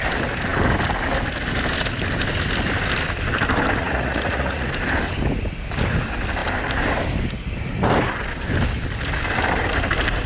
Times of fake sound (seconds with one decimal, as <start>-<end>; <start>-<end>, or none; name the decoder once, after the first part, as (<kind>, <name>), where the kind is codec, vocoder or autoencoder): 3.8-4.7 (vocoder, Vocos)